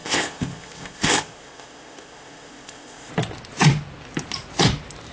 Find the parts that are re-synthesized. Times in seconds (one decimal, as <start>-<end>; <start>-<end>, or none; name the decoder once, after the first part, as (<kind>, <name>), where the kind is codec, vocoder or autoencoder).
0.0-3.1 (codec, ZipCodec)

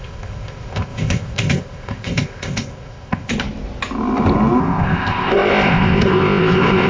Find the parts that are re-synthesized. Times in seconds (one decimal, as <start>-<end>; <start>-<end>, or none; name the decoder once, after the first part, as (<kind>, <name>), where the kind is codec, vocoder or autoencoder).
0.0-3.3 (codec, ZipCodec); 4.6-6.9

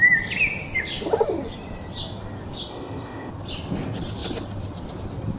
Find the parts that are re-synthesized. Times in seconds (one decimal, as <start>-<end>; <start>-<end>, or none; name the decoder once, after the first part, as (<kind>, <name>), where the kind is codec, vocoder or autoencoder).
2.7-3.3 (codec, ZipCodec)

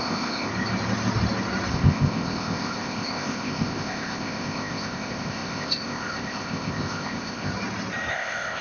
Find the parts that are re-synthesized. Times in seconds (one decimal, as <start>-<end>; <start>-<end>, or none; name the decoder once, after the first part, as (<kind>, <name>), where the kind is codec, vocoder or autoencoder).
0.0-0.5 (codec, ZipCodec); 1.7-7.5; 8.1-8.6

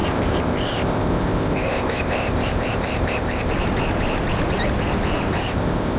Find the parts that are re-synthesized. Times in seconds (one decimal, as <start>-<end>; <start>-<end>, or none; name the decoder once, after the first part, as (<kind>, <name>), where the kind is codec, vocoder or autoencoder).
0.0-3.5 (codec, ZipCodec); 5.4-6.0

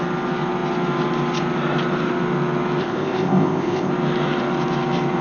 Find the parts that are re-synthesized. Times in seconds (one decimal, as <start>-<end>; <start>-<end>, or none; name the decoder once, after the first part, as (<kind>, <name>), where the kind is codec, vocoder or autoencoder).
2.8-3.9 (codec, ZipCodec)